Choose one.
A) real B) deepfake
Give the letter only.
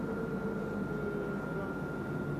A